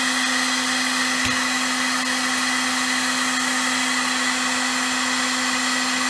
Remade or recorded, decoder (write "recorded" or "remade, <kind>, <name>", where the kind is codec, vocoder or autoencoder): recorded